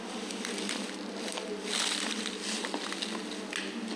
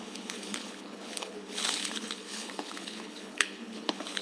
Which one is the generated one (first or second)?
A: second